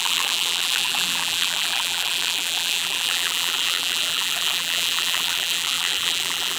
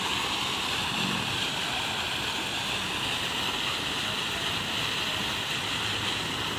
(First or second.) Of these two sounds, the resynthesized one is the first